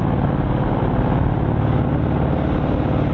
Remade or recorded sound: recorded